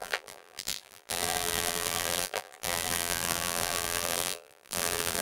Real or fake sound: fake